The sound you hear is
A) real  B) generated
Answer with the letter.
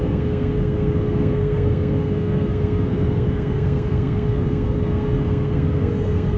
B